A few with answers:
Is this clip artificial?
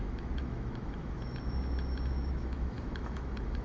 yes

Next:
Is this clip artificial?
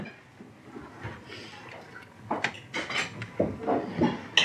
no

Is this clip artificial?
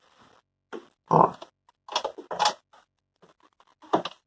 no